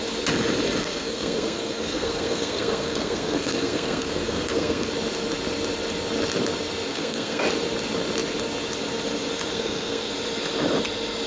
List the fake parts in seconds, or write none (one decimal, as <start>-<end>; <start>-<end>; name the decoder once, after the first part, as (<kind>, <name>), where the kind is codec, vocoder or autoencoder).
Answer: 0.8-4.9 (codec, SNAC); 6.9-7.4; 9.5-10.1